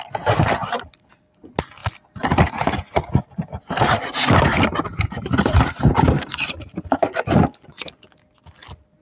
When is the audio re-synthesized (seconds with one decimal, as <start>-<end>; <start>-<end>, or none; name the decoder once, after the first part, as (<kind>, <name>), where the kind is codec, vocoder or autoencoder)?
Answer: 0.6-1.2 (vocoder, BigVGAN v2); 4.9-7.2